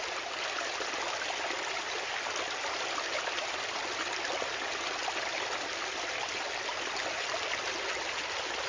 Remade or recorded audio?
recorded